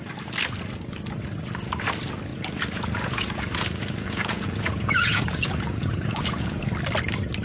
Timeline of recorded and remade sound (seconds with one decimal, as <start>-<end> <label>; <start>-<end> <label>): 0.0-2.3 recorded; 2.3-6.7 remade; 6.7-7.4 recorded